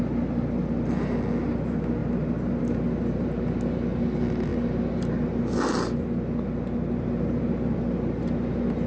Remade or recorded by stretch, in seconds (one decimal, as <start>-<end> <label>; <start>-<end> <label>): 0.0-8.9 recorded